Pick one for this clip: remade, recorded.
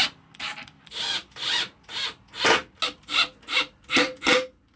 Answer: recorded